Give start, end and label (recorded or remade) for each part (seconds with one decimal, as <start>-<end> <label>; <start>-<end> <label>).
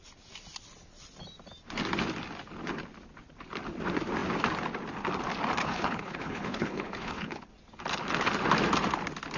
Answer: 0.0-5.6 recorded; 5.6-7.5 remade; 7.5-9.4 recorded